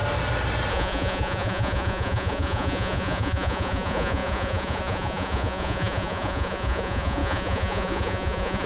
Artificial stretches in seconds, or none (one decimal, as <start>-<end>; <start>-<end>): 0.7-8.7